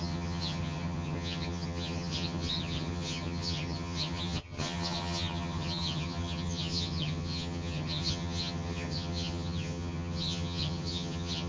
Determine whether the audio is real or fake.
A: fake